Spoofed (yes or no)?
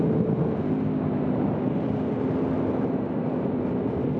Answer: no